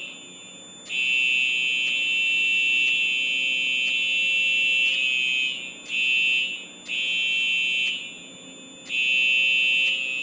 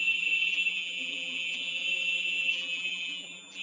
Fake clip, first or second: second